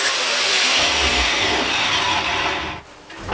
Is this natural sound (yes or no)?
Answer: yes